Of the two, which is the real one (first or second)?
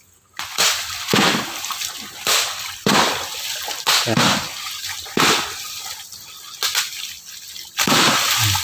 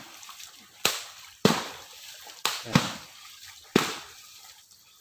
first